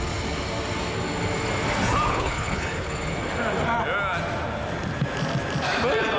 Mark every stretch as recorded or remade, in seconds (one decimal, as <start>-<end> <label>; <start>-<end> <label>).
0.0-2.1 recorded; 2.1-2.9 remade; 2.9-6.2 recorded